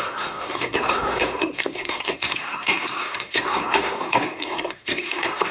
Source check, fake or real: fake